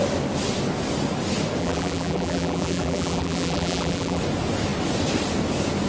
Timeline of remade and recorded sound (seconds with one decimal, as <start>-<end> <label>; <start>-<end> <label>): 0.0-1.6 recorded; 1.6-4.2 remade; 4.2-5.9 recorded